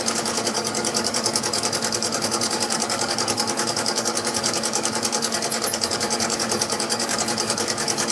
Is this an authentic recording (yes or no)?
no